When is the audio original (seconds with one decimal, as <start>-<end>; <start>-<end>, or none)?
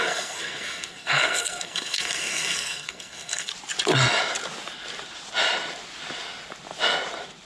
3.5-7.5